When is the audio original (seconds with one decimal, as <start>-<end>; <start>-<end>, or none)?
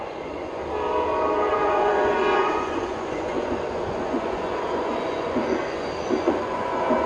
0.6-1.5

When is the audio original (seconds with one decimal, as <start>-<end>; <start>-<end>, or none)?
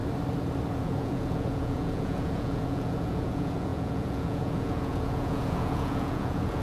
0.0-0.7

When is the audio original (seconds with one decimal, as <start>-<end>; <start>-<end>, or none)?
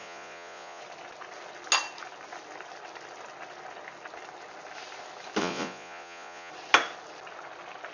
0.8-5.4; 6.5-7.9